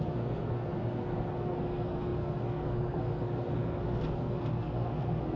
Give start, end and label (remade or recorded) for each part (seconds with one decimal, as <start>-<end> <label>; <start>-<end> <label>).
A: 0.0-5.4 remade